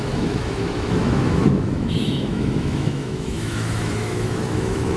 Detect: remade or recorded remade